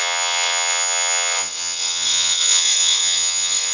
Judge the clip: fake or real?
fake